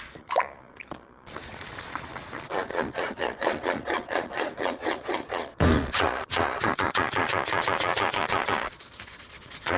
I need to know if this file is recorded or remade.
remade